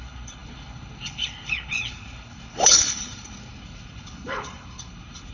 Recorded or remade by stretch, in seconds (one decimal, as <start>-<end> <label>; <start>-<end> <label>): 0.0-5.3 remade